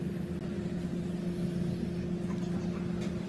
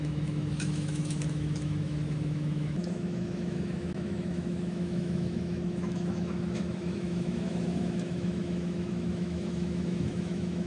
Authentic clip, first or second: first